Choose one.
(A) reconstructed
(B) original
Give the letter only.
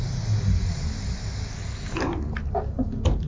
B